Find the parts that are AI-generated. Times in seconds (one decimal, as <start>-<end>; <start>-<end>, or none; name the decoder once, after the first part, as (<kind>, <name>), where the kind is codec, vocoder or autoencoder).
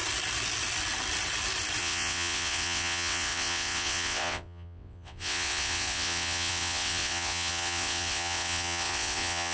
1.8-9.5 (vocoder, WaveNeXt)